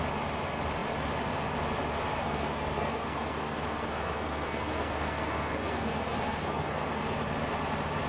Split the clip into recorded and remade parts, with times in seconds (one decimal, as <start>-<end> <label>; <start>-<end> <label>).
0.0-2.1 recorded; 2.1-7.0 remade; 7.0-8.1 recorded